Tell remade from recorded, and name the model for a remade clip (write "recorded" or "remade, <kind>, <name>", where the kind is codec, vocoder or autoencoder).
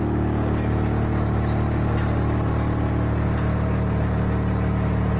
recorded